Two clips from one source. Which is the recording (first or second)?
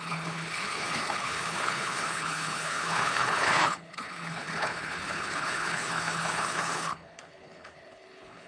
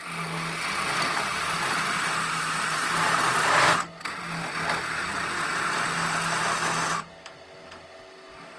second